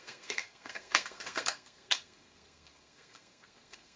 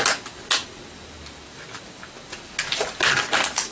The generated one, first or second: first